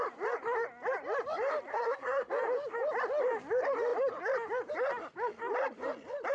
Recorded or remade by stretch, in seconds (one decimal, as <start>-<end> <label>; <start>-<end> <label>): 0.0-1.7 recorded; 1.7-2.3 remade; 2.3-6.3 recorded